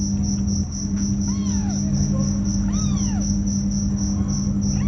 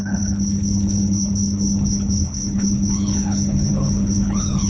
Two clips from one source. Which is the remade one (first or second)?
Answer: second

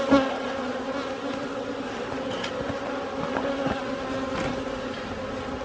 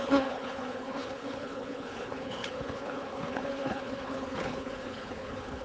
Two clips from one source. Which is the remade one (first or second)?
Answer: second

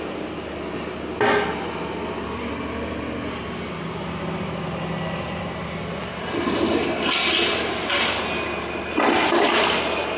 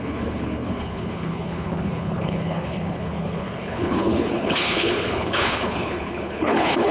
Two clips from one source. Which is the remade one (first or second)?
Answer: second